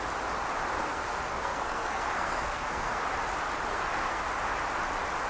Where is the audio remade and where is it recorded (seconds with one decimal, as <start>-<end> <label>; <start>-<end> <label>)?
0.0-0.8 recorded; 0.8-3.0 remade; 3.0-3.7 recorded; 3.7-4.2 remade; 4.2-5.3 recorded